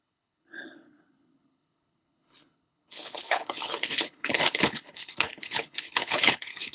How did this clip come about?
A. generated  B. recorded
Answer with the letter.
A